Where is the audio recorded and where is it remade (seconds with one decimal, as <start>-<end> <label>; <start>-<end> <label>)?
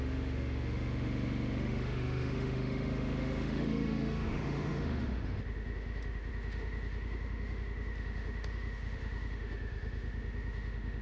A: 0.0-11.0 remade